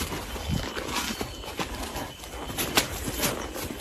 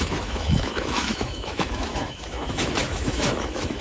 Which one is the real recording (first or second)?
first